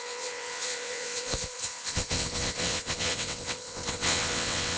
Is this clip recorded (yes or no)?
no